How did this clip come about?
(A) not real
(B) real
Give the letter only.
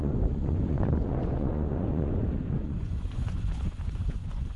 A